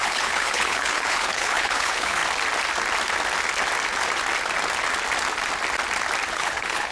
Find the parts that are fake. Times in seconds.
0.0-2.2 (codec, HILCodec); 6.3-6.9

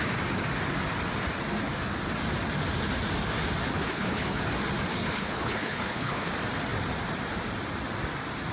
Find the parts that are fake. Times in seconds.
3.7-4.4 (codec, HILCodec); 4.9-6.3